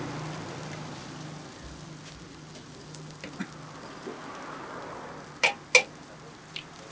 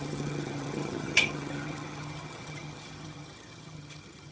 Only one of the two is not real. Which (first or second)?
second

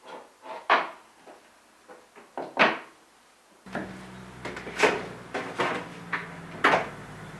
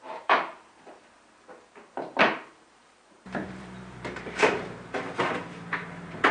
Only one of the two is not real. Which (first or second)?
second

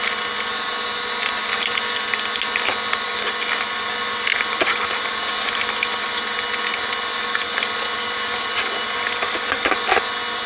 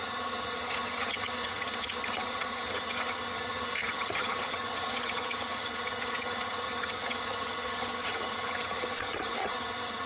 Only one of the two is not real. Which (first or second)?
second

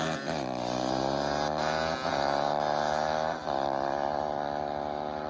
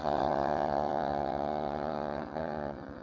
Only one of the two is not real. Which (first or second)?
second